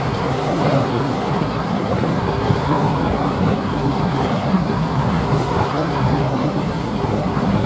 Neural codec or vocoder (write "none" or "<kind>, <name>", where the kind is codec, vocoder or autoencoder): codec, SNAC